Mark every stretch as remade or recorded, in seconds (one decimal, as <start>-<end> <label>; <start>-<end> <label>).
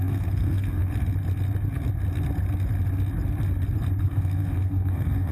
0.0-0.8 remade; 0.8-4.0 recorded; 4.0-5.3 remade